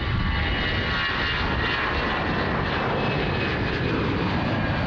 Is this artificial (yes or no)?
no